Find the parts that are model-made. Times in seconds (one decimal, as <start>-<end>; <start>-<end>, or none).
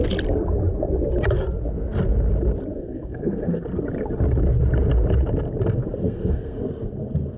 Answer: 2.7-3.6; 6.0-6.6